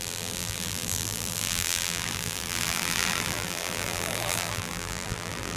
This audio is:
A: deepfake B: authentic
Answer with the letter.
A